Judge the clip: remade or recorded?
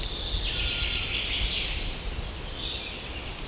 recorded